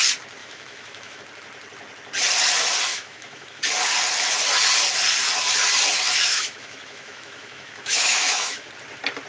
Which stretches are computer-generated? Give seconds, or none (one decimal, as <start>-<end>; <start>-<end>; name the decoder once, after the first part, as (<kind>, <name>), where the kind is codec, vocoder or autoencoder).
0.4-1.2 (autoencoder, DAC-VAE); 2.9-3.6; 6.3-8.7